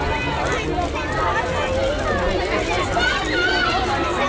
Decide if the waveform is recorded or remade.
recorded